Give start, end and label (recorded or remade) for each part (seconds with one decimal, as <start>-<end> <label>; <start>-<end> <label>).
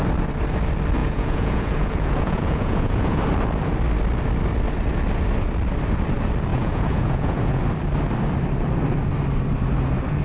0.0-1.0 recorded; 1.0-3.2 remade; 3.2-6.5 recorded; 6.5-7.6 remade; 7.6-10.2 recorded